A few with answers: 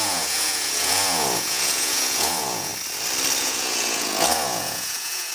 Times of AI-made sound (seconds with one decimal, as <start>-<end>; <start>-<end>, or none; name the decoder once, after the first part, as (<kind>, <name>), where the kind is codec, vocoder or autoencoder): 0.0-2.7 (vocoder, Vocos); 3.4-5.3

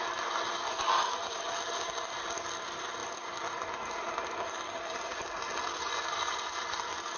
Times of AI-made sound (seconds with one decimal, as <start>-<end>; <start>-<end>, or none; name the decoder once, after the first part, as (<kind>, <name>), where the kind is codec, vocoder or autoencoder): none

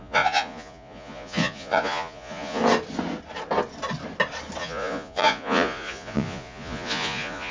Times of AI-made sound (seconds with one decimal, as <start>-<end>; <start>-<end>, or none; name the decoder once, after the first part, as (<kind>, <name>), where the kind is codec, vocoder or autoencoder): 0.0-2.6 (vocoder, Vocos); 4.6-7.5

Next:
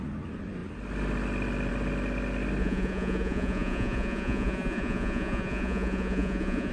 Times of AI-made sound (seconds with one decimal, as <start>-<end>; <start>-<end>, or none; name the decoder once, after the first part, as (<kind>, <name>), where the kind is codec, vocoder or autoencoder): 2.6-6.7 (vocoder, Vocos)

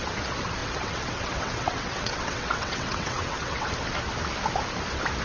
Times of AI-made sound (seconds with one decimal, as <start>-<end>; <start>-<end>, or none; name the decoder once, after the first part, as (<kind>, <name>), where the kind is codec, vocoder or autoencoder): 0.6-3.7 (vocoder, WaveNeXt)